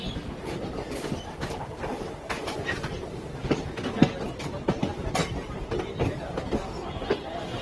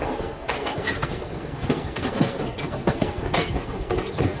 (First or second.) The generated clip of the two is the second